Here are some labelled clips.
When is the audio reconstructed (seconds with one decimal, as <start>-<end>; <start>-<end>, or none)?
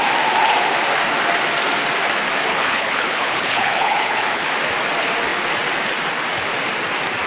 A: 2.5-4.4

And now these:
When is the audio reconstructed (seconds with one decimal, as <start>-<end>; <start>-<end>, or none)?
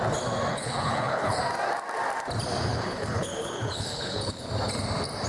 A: 0.5-1.4; 2.7-4.5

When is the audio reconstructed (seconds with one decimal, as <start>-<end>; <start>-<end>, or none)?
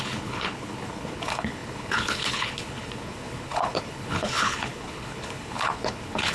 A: 0.0-6.3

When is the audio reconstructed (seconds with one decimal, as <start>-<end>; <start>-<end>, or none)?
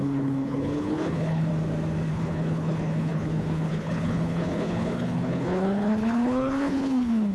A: 0.0-1.5; 2.1-7.3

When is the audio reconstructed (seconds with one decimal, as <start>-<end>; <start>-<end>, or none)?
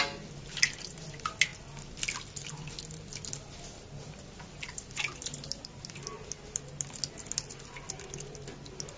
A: none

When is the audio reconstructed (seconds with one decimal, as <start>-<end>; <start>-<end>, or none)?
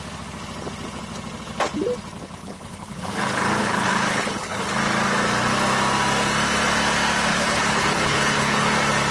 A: 2.4-3.1; 3.6-4.6; 7.3-8.7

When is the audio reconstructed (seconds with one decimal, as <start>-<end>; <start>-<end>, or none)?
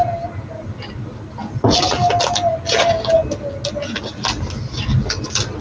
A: none